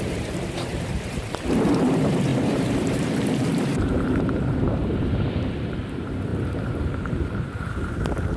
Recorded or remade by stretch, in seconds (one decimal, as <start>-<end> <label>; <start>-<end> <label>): 0.0-8.4 remade